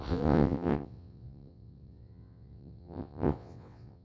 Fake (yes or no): yes